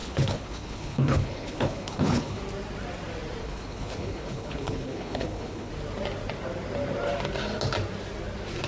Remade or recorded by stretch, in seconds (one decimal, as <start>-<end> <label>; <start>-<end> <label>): 0.0-2.4 remade; 2.4-3.4 recorded; 3.4-5.7 remade; 5.7-8.7 recorded